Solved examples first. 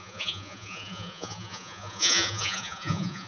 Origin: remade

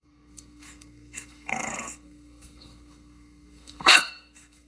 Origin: remade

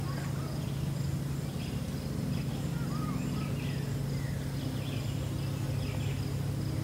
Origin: recorded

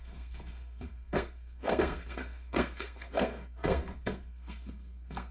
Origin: remade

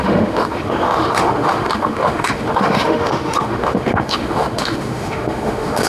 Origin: remade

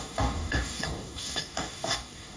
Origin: remade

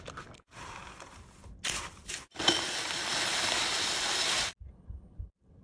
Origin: recorded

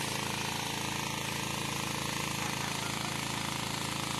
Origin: remade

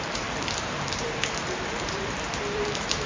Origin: remade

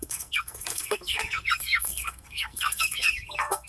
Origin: remade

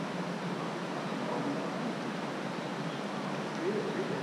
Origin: recorded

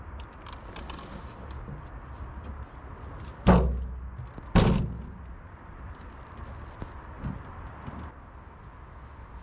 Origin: recorded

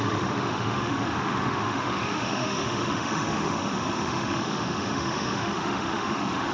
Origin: remade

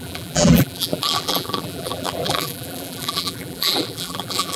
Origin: remade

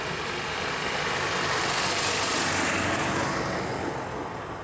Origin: recorded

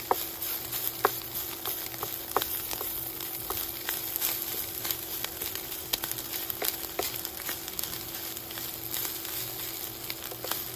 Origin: recorded